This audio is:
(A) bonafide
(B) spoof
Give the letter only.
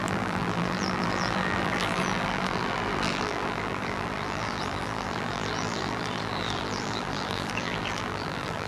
B